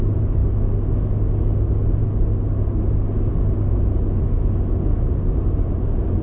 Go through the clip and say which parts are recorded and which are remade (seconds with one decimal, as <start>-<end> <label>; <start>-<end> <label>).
0.0-6.2 recorded